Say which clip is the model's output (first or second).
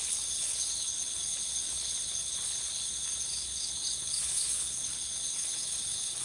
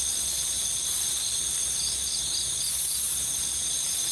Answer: first